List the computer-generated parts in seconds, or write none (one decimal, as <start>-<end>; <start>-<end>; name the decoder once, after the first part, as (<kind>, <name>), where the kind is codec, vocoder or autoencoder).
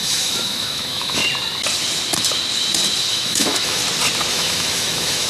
0.0-1.2 (autoencoder, DAC-VAE); 3.1-3.8; 4.3-5.3